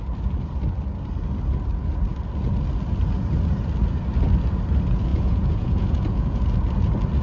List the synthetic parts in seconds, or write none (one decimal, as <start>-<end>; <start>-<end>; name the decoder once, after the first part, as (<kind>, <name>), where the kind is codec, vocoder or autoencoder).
5.1-6.4 (vocoder, Vocos)